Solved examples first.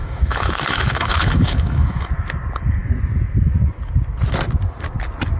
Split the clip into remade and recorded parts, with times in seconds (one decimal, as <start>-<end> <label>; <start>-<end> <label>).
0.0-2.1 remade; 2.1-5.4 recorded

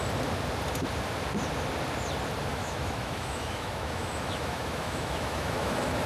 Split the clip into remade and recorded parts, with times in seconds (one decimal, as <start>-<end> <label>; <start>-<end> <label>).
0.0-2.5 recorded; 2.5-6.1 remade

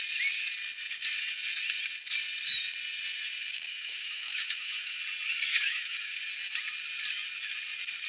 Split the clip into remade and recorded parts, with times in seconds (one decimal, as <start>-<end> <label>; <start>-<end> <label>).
0.0-3.5 recorded; 3.5-5.0 remade; 5.0-5.5 recorded; 5.5-6.2 remade; 6.2-8.1 recorded